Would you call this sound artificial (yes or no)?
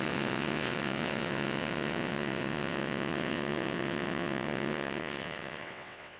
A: yes